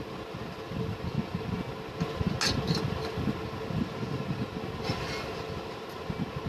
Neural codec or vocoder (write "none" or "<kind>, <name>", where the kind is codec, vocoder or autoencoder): none